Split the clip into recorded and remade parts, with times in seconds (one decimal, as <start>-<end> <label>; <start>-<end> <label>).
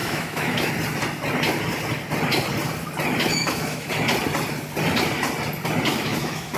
0.0-0.7 remade; 0.7-3.3 recorded; 3.3-3.9 remade; 3.9-5.9 recorded; 5.9-6.6 remade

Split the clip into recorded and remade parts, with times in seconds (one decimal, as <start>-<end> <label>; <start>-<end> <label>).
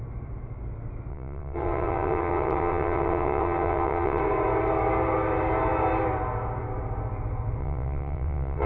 0.0-1.1 recorded; 1.1-4.2 remade; 4.2-7.6 recorded; 7.6-8.7 remade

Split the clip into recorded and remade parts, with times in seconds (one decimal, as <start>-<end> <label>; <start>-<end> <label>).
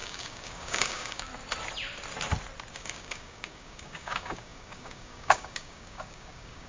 0.0-1.3 remade; 1.3-2.7 recorded; 2.7-6.7 remade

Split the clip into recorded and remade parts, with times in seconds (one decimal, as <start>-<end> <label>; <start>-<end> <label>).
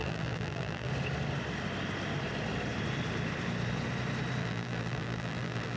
0.0-0.9 remade; 0.9-4.4 recorded; 4.4-5.8 remade